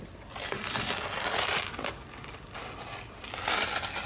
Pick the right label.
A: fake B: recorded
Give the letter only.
B